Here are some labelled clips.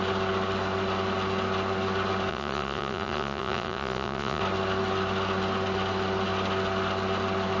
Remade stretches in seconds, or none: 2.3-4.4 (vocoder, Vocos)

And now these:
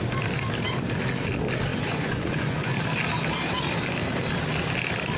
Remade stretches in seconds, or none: 1.7-2.7 (vocoder, Vocos)

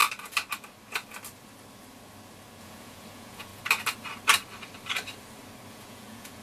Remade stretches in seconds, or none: 2.6-3.5 (vocoder, Vocos); 5.7-6.4